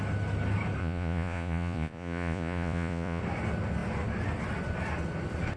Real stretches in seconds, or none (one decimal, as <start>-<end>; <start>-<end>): 0.0-0.8; 3.2-5.6